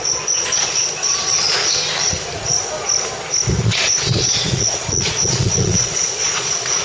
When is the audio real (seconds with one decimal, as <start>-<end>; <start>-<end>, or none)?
1.5-3.6

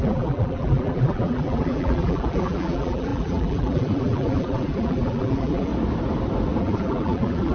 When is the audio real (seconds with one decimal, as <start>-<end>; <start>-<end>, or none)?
5.7-6.6

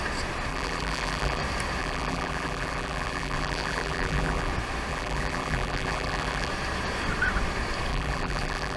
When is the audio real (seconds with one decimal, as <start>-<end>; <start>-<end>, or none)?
0.0-0.5; 1.4-1.8; 4.5-4.9; 6.5-7.9